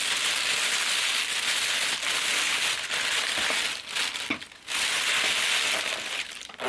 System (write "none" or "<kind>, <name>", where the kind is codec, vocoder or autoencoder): none